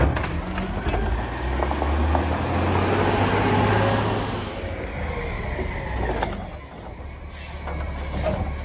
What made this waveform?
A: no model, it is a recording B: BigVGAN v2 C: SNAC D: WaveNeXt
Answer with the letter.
A